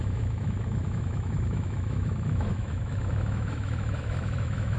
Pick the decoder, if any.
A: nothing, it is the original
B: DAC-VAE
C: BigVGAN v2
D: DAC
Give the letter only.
B